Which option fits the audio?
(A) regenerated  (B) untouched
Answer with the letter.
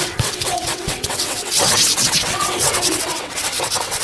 A